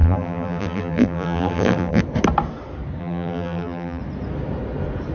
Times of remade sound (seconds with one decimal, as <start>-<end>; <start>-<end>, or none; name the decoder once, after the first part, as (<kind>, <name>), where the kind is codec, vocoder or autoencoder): 0.0-2.0 (vocoder, BigVGAN v2); 3.0-4.0